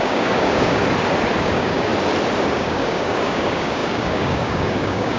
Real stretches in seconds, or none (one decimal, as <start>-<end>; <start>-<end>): 0.8-1.4; 1.9-2.5